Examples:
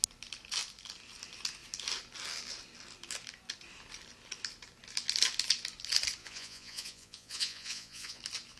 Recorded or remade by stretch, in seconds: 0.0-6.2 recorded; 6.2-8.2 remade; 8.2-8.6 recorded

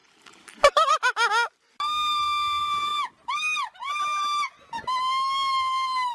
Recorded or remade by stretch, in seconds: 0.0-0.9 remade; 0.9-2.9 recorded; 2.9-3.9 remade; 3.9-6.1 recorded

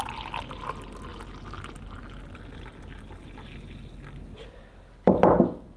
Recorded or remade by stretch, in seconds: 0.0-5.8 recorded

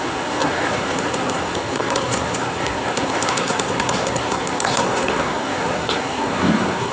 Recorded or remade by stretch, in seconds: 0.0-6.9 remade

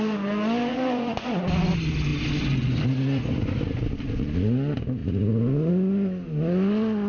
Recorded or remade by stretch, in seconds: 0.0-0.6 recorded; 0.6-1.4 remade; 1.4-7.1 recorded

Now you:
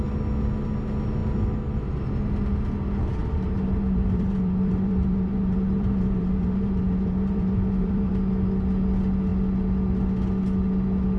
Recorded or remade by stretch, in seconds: 0.0-3.2 recorded; 3.2-8.1 remade; 8.1-11.2 recorded

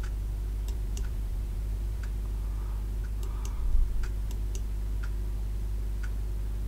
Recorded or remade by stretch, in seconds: 0.0-0.7 recorded; 0.7-2.0 remade; 2.0-3.0 recorded; 3.0-3.8 remade; 3.8-6.7 recorded